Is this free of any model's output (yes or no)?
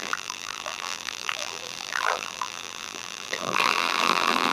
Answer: no